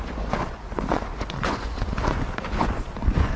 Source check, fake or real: fake